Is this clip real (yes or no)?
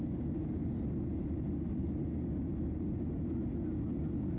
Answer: yes